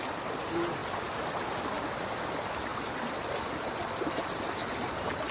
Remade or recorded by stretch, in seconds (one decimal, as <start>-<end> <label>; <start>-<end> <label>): 0.0-5.3 recorded